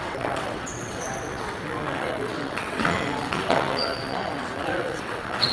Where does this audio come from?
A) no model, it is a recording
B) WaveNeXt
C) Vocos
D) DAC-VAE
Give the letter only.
B